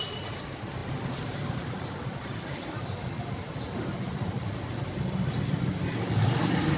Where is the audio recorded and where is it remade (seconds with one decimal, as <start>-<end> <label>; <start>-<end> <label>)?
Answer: 0.0-6.8 recorded